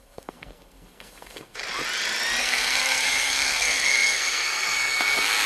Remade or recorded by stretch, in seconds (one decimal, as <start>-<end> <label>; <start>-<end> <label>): 0.0-1.6 remade; 1.6-2.4 recorded; 2.4-5.5 remade